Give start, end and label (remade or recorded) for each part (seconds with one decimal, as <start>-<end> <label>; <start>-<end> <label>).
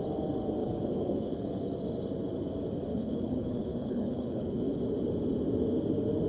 0.0-0.6 recorded; 0.6-1.7 remade; 1.7-2.9 recorded; 2.9-4.8 remade; 4.8-6.3 recorded